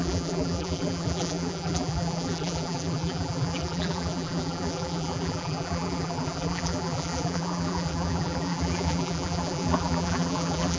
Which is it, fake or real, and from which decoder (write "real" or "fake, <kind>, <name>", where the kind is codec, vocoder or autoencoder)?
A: fake, vocoder, BigVGAN v2